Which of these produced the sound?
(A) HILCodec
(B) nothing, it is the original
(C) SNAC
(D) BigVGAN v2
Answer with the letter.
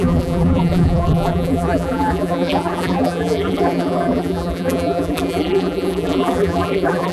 D